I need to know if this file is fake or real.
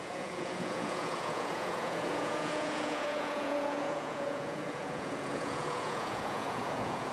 fake